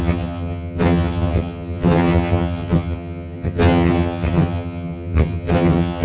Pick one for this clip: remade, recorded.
remade